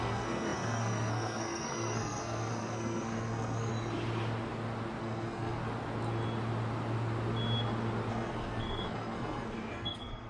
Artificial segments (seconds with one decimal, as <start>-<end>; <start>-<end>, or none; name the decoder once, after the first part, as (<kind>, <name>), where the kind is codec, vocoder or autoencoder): 0.0-3.7 (codec, SNAC); 5.0-5.6; 8.1-10.3

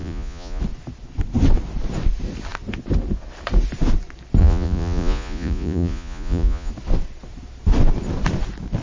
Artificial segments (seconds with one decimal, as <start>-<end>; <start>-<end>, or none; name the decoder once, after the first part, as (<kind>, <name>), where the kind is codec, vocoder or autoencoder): 0.0-0.6 (vocoder, Vocos); 4.4-6.7

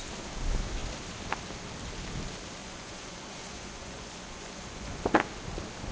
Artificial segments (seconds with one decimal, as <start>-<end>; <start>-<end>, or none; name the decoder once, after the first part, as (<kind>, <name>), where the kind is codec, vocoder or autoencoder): 2.6-5.0 (vocoder, Vocos)